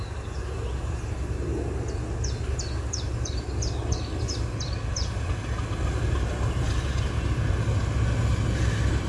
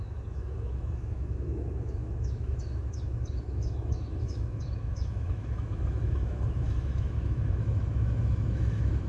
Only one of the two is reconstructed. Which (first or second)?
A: second